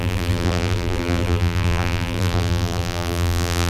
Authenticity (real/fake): fake